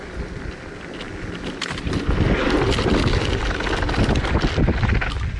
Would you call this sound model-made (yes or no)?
no